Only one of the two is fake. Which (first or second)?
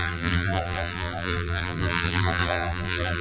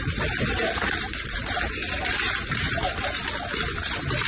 first